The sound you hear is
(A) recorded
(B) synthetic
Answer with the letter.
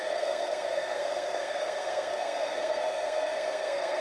B